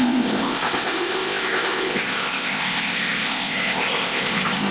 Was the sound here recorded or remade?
remade